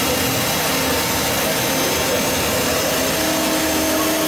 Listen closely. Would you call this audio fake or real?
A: real